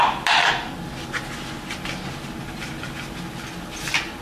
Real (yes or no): yes